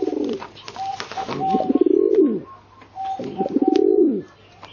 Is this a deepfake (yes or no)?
no